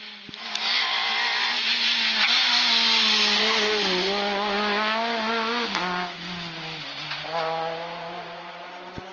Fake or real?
real